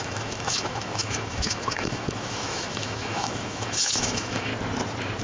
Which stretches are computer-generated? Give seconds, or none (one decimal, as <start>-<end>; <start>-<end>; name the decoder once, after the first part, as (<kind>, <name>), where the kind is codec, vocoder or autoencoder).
0.0-4.5 (autoencoder, DAC-VAE)